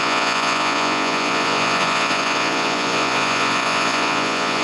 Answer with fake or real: fake